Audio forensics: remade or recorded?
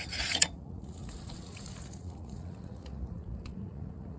remade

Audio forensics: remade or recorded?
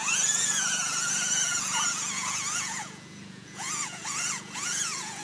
remade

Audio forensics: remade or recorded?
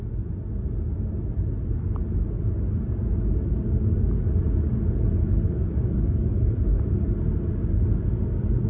recorded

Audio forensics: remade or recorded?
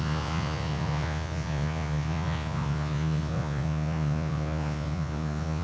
remade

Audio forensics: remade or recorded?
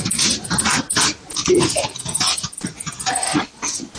recorded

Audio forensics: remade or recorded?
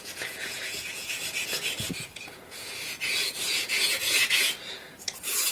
remade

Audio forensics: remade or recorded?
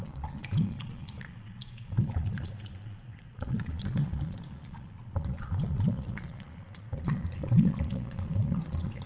remade